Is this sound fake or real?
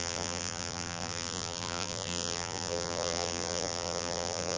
fake